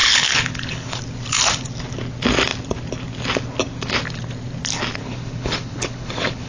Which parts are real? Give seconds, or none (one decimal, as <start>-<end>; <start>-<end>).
1.0-5.0